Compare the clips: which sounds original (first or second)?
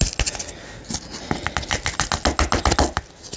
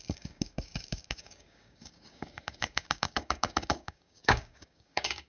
first